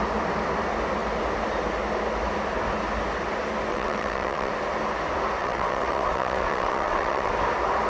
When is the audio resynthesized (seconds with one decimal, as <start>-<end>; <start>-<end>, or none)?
3.7-4.5; 5.4-7.3